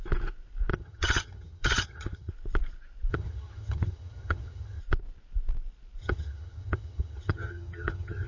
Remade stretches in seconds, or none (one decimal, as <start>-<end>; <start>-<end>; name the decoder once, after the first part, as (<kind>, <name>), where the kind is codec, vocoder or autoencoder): 0.7-2.3 (vocoder, HiFi-GAN); 3.1-4.8; 6.0-8.3